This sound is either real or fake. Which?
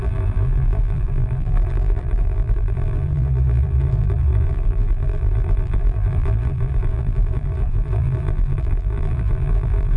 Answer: fake